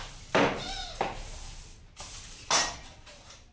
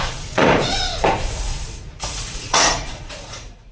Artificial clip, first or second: second